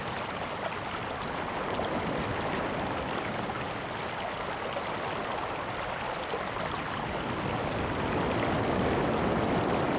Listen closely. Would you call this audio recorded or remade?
recorded